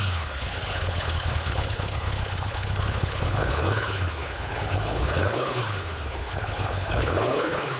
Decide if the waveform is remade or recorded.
remade